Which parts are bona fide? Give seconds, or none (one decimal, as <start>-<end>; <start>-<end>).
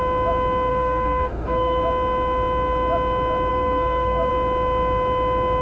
0.0-0.7; 1.8-3.5; 4.3-5.6